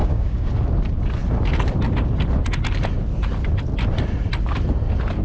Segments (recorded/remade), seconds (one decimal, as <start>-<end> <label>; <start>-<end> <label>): 0.0-0.5 remade; 0.5-5.2 recorded